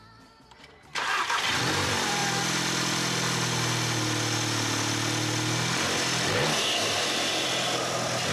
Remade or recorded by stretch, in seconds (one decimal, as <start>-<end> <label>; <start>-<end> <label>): 0.0-2.2 remade; 2.2-6.9 recorded; 6.9-8.3 remade